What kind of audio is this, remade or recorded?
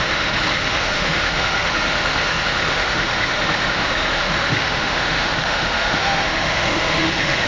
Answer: remade